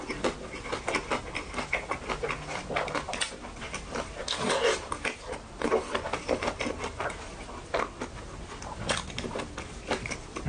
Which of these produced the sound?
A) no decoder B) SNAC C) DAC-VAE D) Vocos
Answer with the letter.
A